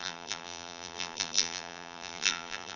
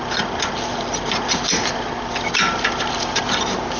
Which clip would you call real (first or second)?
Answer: second